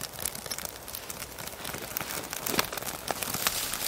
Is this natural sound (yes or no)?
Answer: yes